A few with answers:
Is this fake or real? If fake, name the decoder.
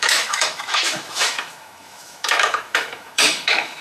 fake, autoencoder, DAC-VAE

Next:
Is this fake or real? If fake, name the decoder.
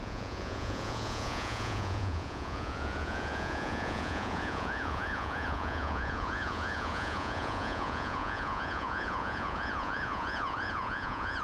fake, vocoder, Vocos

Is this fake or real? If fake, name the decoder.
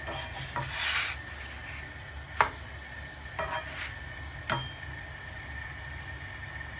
real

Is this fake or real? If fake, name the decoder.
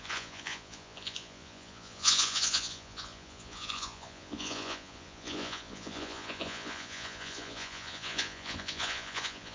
fake, vocoder, Vocos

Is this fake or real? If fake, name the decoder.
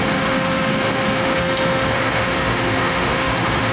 fake, autoencoder, DAC-VAE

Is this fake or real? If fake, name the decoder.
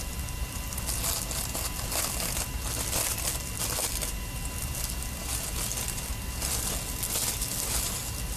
real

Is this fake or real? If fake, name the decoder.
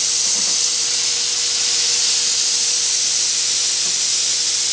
real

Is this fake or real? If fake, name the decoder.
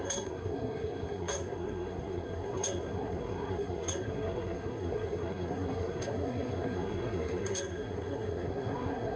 fake, codec, SNAC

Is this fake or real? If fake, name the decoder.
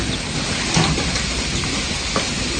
real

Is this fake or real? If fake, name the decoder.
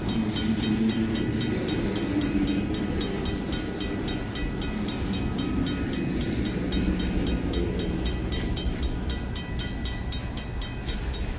real